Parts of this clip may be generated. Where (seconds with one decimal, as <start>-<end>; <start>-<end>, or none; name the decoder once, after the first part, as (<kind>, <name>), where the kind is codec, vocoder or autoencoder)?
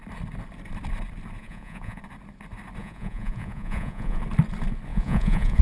1.4-2.0 (vocoder, Vocos); 2.8-4.2; 4.9-5.6